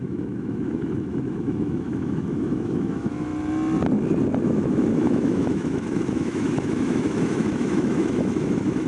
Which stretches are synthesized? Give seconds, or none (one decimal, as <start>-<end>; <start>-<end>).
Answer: 0.0-3.3; 4.4-8.9